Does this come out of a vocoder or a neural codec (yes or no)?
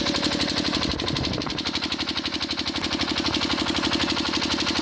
no